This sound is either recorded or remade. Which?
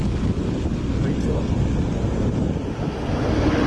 recorded